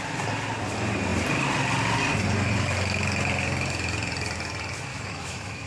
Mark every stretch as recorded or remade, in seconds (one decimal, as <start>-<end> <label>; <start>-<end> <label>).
0.0-4.9 recorded; 4.9-5.7 remade